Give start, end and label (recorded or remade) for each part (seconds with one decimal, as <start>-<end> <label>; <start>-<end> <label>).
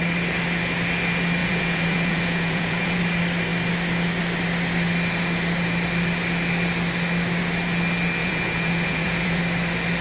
0.0-1.4 recorded; 1.4-3.0 remade; 3.0-8.2 recorded; 8.2-9.4 remade; 9.4-10.0 recorded